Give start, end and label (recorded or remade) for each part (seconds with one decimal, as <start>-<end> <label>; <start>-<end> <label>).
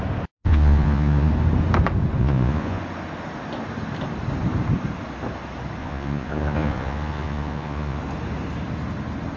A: 0.0-0.4 recorded; 0.4-1.3 remade; 1.3-2.2 recorded; 2.2-2.8 remade; 2.8-5.8 recorded; 5.8-8.0 remade; 8.0-9.4 recorded